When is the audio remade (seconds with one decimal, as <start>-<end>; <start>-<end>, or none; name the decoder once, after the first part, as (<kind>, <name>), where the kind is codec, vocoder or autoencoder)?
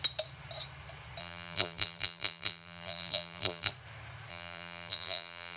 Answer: 1.2-3.7 (vocoder, BigVGAN v2); 4.3-5.6